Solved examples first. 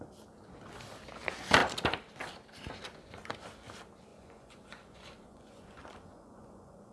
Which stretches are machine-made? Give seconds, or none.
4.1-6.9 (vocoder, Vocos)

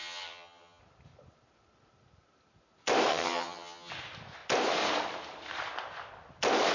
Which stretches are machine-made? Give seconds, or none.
0.0-0.8 (vocoder, HiFi-GAN); 3.1-3.9

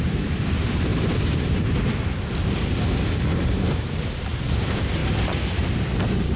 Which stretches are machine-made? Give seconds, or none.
0.0-0.9 (vocoder, BigVGAN v2); 3.2-6.4